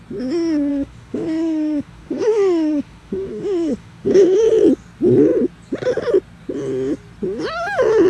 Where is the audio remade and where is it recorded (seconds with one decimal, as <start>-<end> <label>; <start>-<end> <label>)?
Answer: 0.0-0.7 recorded; 0.7-4.4 remade; 4.4-8.1 recorded